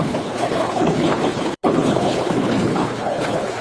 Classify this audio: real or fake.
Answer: fake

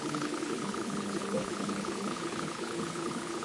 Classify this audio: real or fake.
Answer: fake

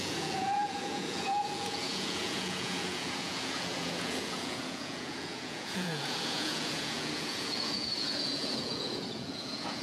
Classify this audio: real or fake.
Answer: fake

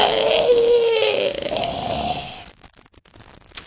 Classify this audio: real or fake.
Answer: real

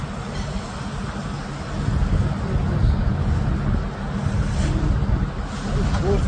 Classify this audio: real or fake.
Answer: real